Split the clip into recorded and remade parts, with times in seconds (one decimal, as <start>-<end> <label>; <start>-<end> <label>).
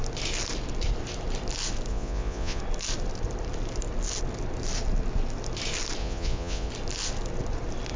0.0-1.9 recorded; 1.9-2.6 remade; 2.6-6.0 recorded; 6.0-6.7 remade; 6.7-8.0 recorded